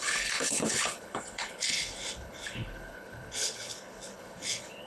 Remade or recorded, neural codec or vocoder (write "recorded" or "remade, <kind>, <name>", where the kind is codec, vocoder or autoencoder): remade, codec, HILCodec